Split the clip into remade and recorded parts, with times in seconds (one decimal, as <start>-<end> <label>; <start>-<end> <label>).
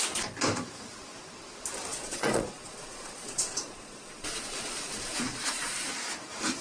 0.0-1.9 recorded; 1.9-5.9 remade; 5.9-6.6 recorded